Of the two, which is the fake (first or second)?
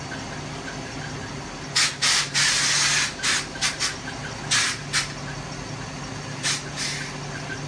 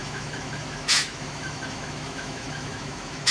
second